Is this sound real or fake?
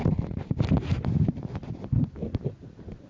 real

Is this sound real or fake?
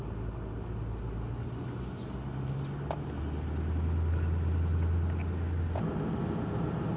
real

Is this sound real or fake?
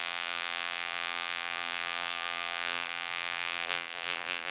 fake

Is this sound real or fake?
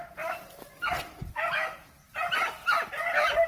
real